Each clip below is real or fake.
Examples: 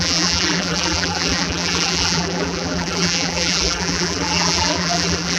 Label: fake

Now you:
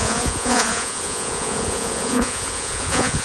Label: fake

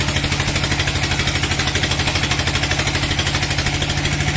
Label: real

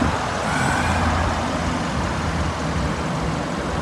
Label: real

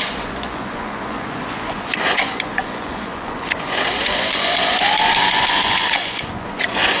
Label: fake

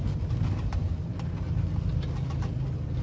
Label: real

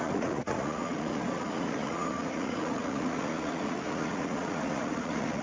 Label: fake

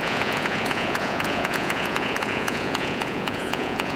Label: fake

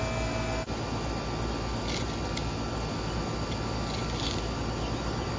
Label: real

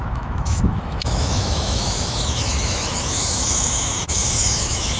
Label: fake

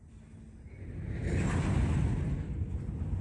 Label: real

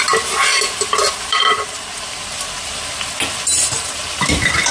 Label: real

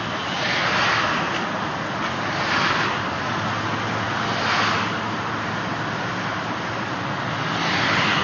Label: real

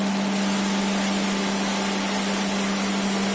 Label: real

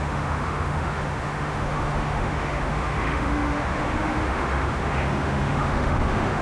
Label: fake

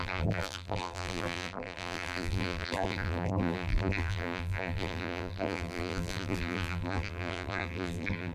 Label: fake